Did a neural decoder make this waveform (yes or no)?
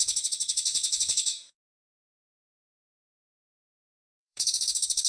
yes